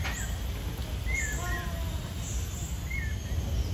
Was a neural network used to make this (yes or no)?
no